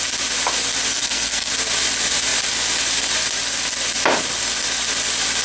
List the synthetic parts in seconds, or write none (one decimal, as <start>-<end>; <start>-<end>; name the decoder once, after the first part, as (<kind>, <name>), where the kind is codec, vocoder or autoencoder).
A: 0.9-1.5 (codec, SNAC)